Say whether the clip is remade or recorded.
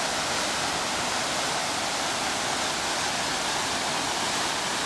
recorded